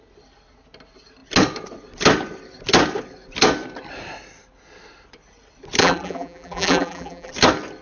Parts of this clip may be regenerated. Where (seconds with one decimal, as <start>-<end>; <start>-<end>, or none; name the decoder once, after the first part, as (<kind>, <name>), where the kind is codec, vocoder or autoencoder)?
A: 5.8-7.3 (vocoder, BigVGAN v2)